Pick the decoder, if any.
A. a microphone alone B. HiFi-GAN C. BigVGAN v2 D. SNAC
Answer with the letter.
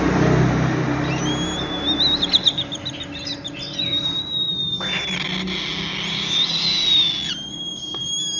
A